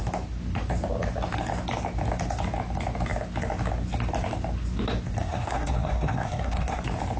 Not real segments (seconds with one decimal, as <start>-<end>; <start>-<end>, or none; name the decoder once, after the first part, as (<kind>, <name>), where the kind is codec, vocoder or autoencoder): 5.2-6.8 (codec, SNAC)